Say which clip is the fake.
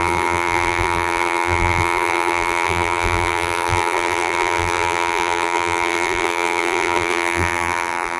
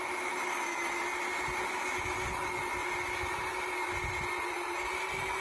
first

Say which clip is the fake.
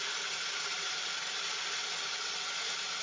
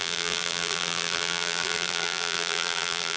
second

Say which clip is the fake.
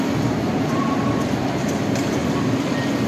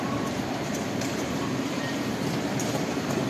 second